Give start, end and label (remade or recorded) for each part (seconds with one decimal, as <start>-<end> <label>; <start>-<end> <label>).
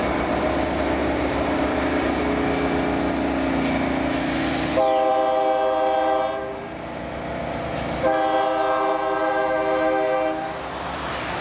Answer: 0.0-1.0 recorded; 1.0-2.2 remade; 2.2-11.4 recorded